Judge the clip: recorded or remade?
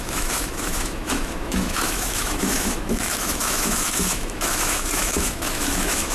remade